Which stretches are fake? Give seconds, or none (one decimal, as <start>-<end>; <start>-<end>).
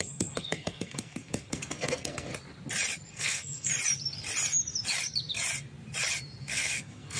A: 0.0-2.3; 3.1-3.7; 6.4-7.2